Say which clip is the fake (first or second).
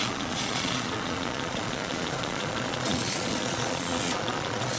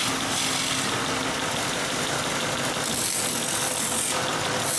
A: first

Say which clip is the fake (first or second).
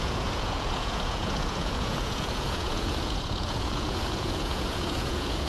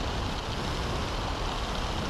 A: first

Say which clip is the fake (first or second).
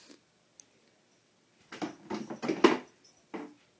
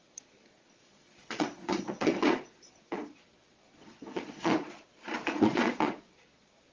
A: second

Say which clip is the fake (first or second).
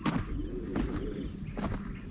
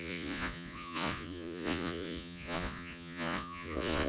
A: second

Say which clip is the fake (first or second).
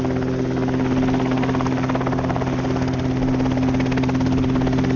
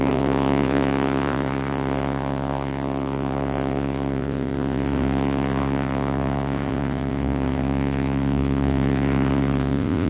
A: second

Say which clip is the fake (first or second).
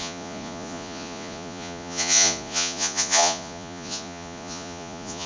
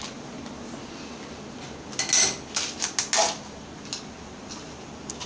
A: first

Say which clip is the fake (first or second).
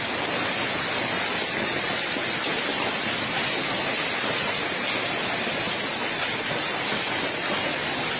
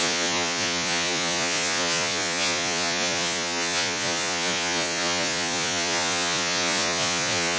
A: second